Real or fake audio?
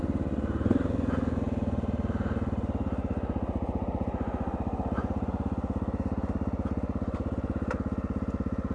real